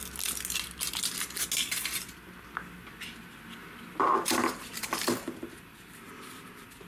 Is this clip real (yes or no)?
yes